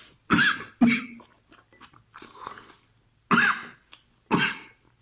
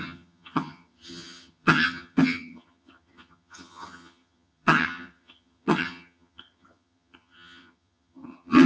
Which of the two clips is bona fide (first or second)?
first